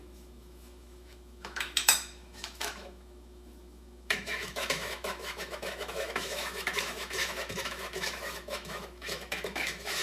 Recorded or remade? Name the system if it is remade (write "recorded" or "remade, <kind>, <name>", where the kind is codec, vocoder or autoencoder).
remade, autoencoder, DAC-VAE